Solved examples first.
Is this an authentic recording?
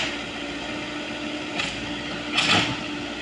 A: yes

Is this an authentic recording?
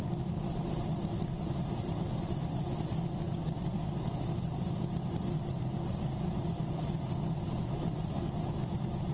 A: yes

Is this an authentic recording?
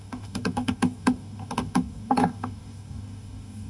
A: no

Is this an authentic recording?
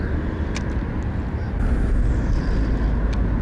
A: yes